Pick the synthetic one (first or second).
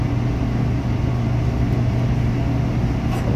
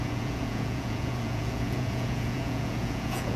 second